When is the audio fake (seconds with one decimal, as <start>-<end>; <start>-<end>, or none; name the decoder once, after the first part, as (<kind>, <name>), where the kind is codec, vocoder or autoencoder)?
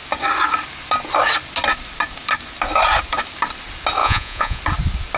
4.0-4.6 (vocoder, Vocos)